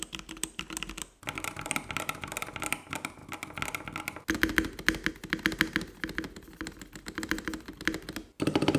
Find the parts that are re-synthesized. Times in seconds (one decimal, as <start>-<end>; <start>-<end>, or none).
none